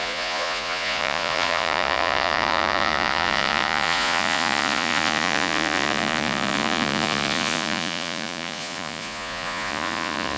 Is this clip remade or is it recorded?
remade